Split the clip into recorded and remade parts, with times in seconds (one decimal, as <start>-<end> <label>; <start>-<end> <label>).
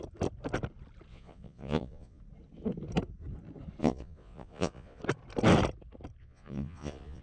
0.0-1.1 recorded; 1.1-2.2 remade; 2.2-3.8 recorded; 3.8-5.0 remade; 5.0-6.2 recorded; 6.2-7.2 remade